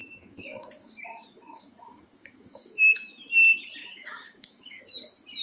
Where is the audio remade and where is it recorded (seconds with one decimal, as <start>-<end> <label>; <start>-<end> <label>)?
0.0-3.2 remade; 3.2-3.8 recorded; 3.8-4.8 remade; 4.8-5.4 recorded